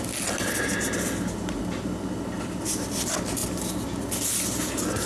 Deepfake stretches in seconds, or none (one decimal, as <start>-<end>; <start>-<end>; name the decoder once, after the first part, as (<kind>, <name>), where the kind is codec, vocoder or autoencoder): none